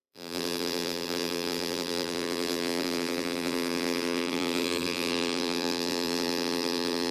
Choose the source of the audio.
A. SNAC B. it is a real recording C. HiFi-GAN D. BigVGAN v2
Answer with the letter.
D